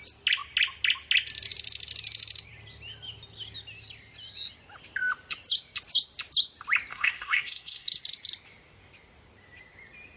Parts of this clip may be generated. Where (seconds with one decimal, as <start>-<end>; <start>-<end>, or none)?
6.9-8.0